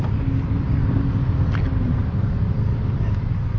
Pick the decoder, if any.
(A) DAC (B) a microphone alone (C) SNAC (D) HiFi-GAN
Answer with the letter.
B